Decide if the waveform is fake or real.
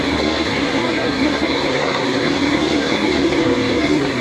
fake